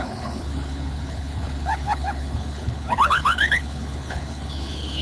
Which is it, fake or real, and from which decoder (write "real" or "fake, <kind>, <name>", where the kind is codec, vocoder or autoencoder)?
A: fake, codec, HILCodec